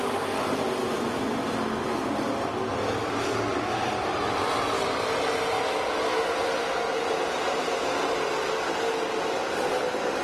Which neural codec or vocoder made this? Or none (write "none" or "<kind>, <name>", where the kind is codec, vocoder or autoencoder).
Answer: none